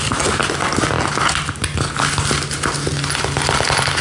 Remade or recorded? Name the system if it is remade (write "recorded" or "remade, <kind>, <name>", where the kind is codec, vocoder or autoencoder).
recorded